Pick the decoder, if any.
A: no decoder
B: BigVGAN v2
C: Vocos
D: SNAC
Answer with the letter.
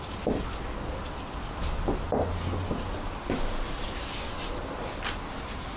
A